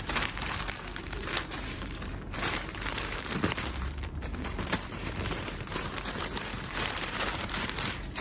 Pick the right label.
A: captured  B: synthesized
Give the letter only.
B